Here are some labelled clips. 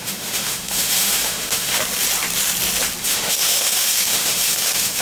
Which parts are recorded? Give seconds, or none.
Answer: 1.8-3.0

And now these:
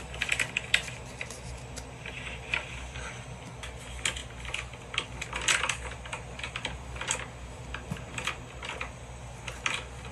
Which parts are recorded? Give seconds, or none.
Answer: 0.0-10.1

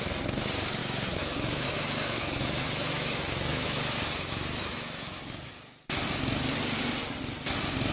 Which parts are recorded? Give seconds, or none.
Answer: 0.0-0.8; 5.5-7.9